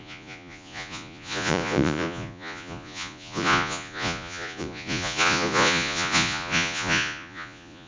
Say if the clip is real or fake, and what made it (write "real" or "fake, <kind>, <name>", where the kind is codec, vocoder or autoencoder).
fake, vocoder, Vocos